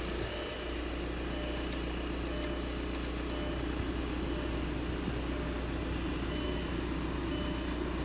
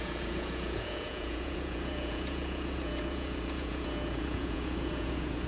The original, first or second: first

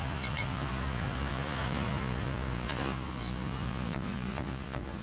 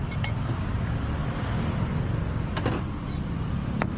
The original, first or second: second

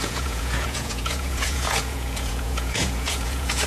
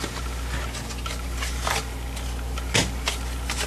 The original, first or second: second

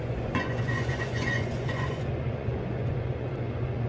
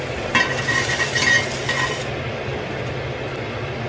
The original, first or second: second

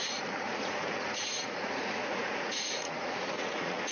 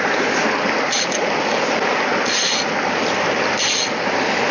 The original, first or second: second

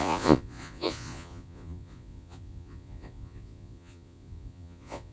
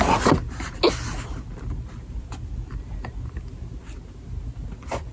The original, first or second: second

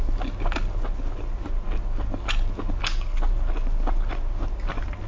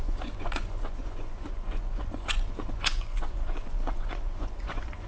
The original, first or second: first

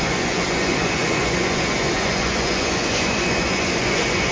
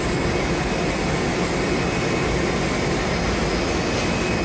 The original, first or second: second